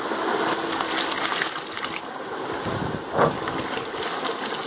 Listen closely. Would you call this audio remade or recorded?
recorded